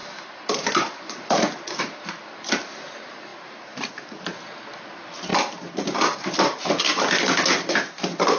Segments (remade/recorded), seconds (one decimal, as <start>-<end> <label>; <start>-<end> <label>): 0.0-1.8 remade; 1.8-3.3 recorded; 3.3-4.0 remade; 4.0-8.4 recorded